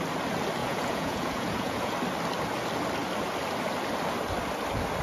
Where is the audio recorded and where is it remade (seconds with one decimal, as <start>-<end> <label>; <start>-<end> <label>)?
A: 0.0-0.6 recorded; 0.6-1.9 remade; 1.9-5.0 recorded